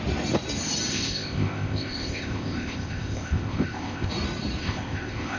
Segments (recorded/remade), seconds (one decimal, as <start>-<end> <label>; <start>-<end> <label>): 0.0-0.9 recorded; 0.9-4.1 remade; 4.1-4.6 recorded; 4.6-5.4 remade